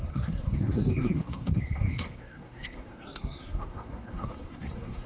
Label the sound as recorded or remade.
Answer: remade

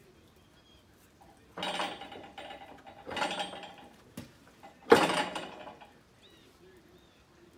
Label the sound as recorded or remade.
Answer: recorded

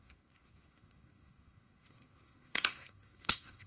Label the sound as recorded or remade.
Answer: remade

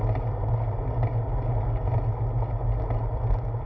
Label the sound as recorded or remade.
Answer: recorded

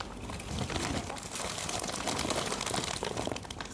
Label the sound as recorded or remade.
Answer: recorded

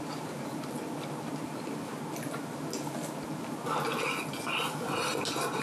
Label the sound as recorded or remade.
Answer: recorded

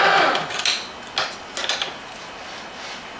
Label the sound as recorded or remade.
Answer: recorded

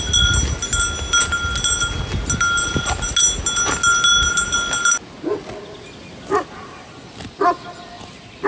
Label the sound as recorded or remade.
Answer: recorded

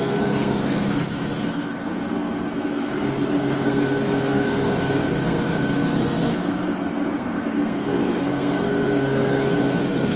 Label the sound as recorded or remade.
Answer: remade